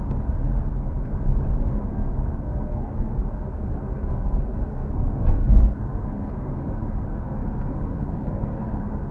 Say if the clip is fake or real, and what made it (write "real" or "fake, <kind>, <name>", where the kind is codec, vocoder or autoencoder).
fake, codec, SNAC